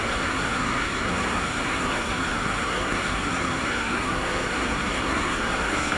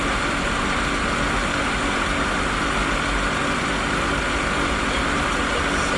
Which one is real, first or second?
second